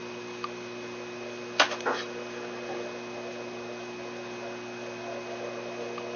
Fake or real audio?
real